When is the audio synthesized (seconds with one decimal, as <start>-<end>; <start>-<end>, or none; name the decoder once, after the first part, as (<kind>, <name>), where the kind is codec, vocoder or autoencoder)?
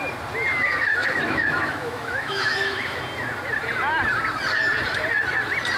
0.5-3.0 (autoencoder, DAC-VAE)